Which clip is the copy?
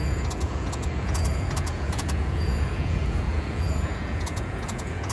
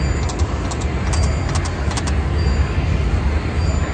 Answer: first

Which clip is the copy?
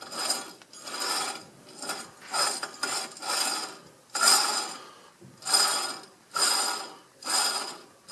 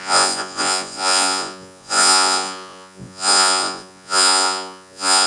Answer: second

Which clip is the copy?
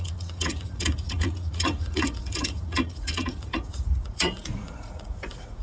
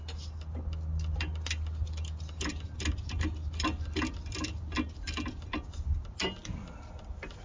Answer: first